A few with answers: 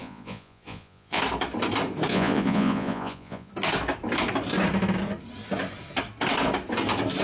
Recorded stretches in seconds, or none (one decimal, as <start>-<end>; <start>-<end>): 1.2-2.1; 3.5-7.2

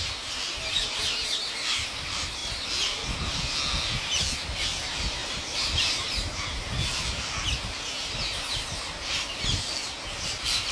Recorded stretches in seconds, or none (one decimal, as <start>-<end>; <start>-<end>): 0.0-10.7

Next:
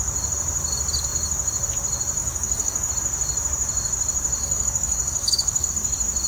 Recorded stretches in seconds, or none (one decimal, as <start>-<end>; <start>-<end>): 0.0-2.2; 2.9-4.4; 5.7-6.3

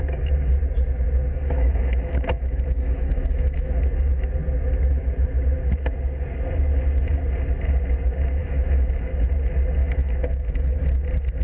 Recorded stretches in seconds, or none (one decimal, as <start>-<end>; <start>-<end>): 0.0-1.3; 3.7-8.4; 9.1-9.8; 10.9-11.4

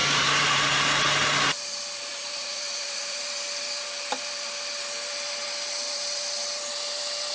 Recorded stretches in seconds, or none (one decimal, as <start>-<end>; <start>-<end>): 0.5-2.1; 3.2-7.3

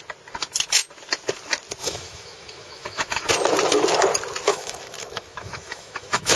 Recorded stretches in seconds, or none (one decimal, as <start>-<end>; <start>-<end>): 0.0-1.8; 3.3-4.5